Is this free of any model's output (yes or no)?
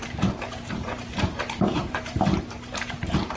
no